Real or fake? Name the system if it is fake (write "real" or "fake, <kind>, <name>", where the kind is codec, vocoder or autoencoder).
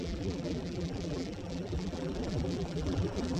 fake, vocoder, BigVGAN v2